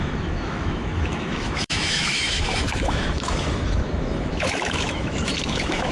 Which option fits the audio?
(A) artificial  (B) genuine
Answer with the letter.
A